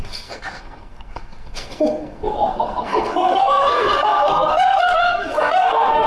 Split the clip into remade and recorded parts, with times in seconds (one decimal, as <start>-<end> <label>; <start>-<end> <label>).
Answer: 0.0-6.1 remade